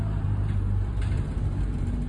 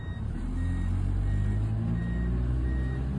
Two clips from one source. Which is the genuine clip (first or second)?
second